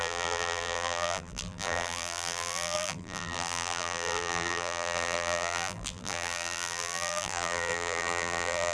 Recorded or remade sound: remade